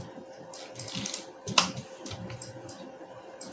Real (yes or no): yes